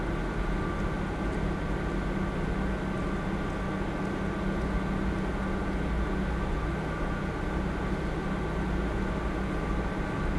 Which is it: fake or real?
real